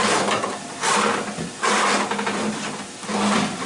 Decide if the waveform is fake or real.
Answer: real